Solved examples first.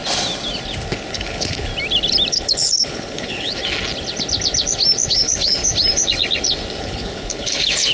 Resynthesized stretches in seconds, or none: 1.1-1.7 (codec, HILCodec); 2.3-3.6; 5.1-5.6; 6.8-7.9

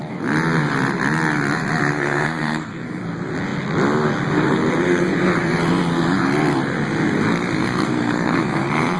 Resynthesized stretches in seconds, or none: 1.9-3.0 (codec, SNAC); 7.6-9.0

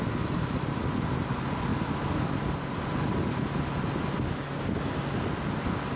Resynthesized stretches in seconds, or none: none

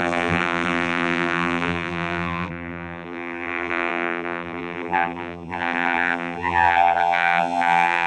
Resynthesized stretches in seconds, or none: 0.0-8.1 (vocoder, BigVGAN v2)